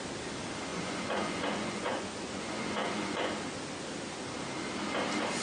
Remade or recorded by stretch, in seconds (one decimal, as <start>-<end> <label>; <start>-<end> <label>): 0.0-0.7 recorded; 0.7-3.3 remade; 3.3-5.4 recorded